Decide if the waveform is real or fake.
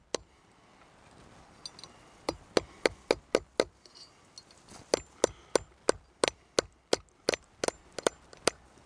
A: real